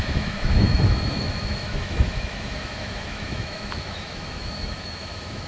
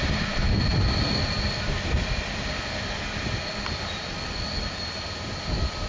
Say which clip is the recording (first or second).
second